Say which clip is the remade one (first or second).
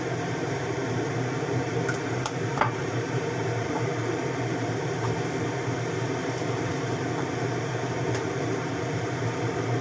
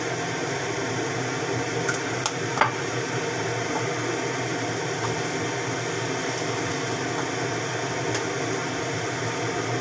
first